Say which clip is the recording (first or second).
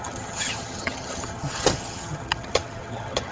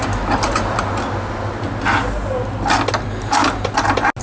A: second